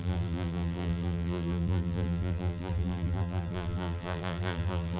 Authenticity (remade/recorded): remade